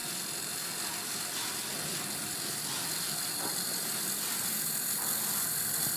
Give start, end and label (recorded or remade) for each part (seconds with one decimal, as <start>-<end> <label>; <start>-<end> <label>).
0.0-6.0 recorded

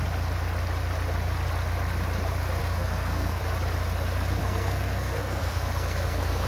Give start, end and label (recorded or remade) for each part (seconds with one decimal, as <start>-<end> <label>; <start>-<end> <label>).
0.0-2.6 recorded; 2.6-3.4 remade; 3.4-4.4 recorded; 4.4-6.5 remade

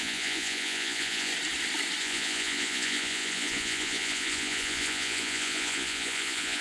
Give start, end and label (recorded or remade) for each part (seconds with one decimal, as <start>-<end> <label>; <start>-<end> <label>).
0.0-1.3 remade; 1.3-2.0 recorded; 2.0-6.6 remade

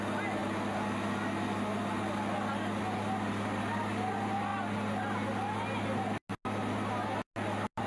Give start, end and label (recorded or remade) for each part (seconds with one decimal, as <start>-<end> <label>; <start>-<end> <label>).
0.0-7.9 recorded

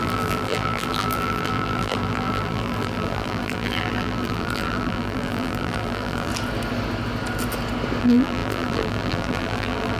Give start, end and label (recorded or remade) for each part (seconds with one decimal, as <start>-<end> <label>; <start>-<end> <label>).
0.0-6.3 remade; 6.3-8.0 recorded; 8.0-10.0 remade

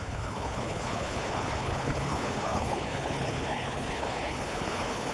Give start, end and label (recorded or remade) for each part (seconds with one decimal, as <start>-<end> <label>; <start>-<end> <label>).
0.0-5.1 remade

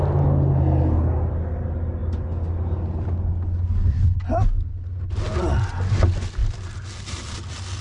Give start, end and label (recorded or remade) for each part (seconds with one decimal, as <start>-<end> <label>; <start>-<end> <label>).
0.0-6.4 recorded; 6.4-7.8 remade